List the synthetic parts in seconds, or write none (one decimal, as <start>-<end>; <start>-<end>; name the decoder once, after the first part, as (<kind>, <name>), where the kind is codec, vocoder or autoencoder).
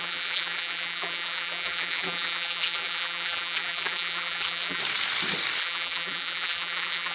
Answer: 0.0-4.8 (vocoder, BigVGAN v2); 5.6-7.1